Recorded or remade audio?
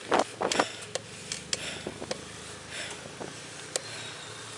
recorded